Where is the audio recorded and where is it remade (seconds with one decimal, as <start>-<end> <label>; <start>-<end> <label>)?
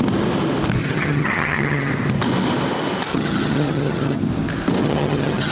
0.0-0.8 recorded; 0.8-1.9 remade; 1.9-3.1 recorded; 3.1-4.2 remade; 4.2-4.8 recorded; 4.8-5.5 remade